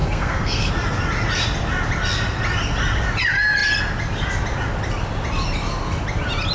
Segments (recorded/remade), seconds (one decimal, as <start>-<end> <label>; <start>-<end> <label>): 0.0-0.7 remade; 0.7-6.5 recorded